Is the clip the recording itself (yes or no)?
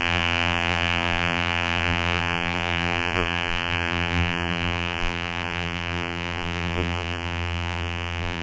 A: no